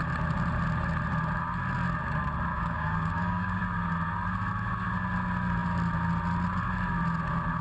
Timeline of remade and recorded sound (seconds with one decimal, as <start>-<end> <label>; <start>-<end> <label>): 0.0-2.5 recorded; 2.5-3.6 remade; 3.6-7.6 recorded